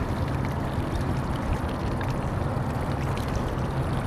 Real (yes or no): yes